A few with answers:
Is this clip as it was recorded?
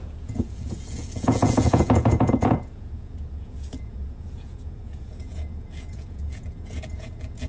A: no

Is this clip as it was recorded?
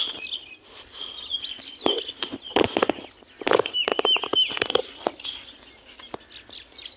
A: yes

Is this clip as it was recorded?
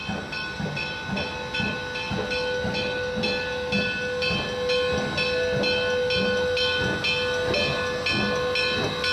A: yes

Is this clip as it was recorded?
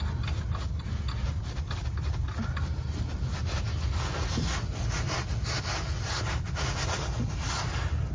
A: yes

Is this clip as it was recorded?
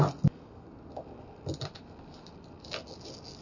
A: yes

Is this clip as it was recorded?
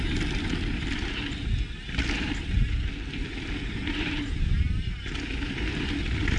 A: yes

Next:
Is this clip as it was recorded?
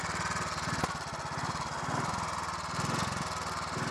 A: yes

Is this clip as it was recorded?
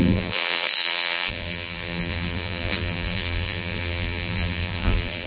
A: no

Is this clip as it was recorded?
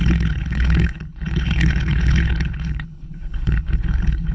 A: no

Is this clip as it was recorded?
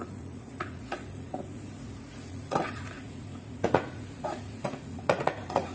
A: no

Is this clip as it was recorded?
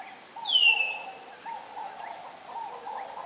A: yes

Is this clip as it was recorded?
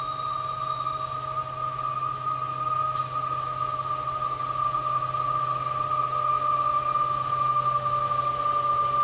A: yes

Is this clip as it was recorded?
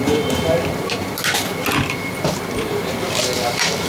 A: yes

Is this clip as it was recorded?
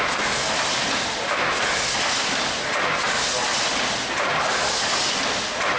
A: yes